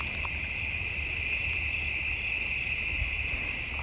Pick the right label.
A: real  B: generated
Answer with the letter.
A